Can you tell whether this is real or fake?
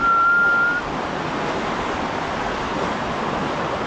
real